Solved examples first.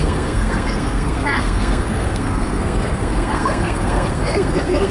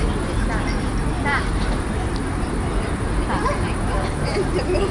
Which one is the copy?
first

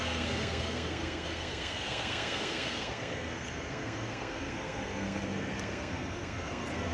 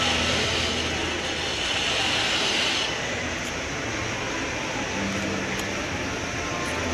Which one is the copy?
first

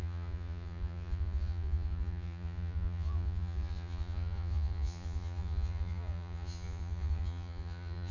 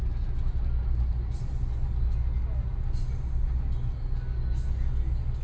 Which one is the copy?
first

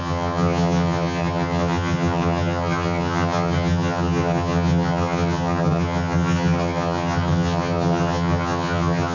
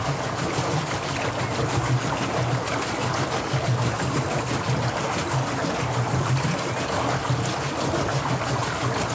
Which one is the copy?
first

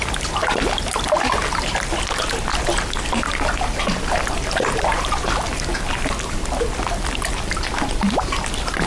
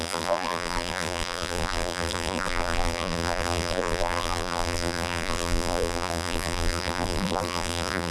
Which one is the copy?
second